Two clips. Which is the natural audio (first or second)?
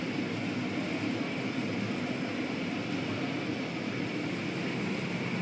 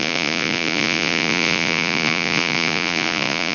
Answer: first